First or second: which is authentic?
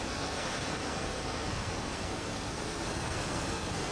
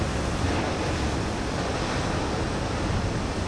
second